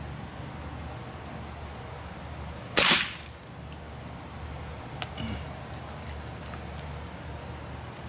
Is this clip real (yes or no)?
yes